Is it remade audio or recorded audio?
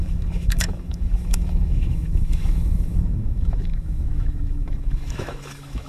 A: remade